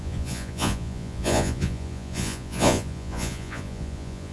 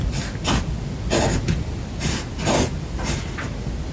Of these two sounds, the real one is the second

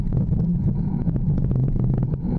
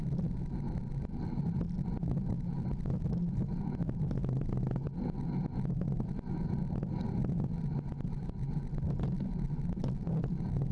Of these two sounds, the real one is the second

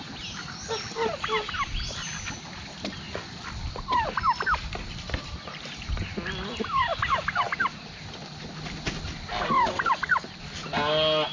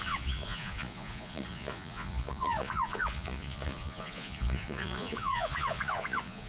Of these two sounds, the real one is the first